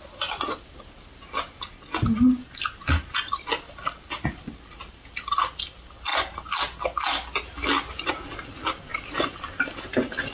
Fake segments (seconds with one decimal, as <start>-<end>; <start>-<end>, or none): none